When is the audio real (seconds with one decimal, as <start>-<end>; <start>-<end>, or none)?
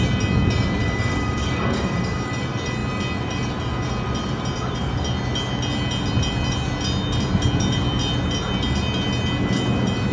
0.0-0.8; 2.3-10.1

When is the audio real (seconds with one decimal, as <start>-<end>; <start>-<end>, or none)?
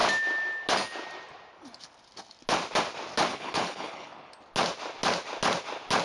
0.0-3.3; 4.3-6.0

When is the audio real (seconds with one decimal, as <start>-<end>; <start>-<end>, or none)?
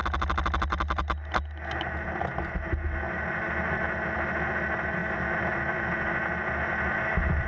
0.0-7.5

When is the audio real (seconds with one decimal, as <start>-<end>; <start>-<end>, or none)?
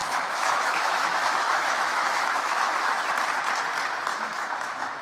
3.0-4.1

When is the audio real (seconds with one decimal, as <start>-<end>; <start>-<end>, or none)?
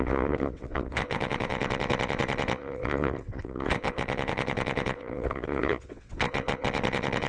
none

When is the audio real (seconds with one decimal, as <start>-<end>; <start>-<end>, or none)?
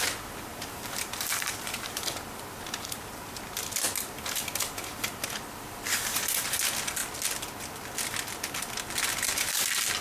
0.0-0.5; 3.4-10.0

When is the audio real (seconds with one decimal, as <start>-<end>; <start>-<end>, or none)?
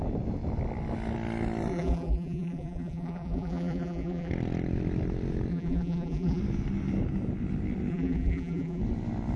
0.0-1.7; 4.3-5.5; 6.4-7.9; 8.8-9.4